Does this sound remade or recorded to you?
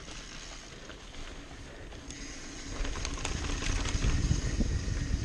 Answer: recorded